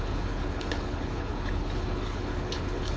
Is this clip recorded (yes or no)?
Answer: no